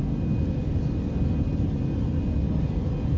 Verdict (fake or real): real